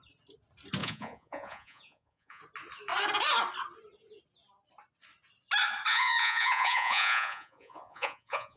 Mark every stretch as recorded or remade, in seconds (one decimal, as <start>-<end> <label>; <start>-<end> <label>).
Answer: 0.0-0.8 recorded; 0.8-2.4 remade; 2.4-5.9 recorded; 5.9-8.6 remade